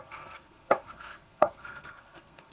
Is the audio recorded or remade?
remade